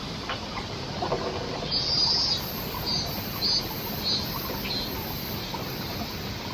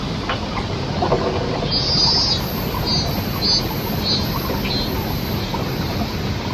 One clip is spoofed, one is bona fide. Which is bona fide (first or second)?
second